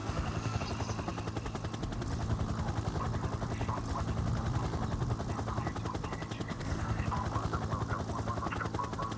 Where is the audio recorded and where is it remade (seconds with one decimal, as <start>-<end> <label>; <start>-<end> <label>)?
0.0-0.6 remade; 0.6-6.5 recorded; 6.5-7.0 remade; 7.0-9.2 recorded